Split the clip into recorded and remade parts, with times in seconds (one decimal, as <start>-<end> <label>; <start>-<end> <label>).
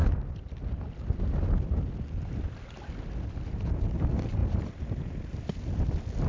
0.0-6.3 recorded